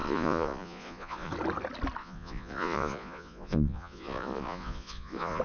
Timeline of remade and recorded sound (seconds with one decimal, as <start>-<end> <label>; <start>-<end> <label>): 0.0-1.3 remade; 1.3-2.0 recorded; 2.0-5.4 remade